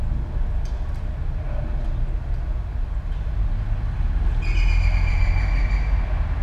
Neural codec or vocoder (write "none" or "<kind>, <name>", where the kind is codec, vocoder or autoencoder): none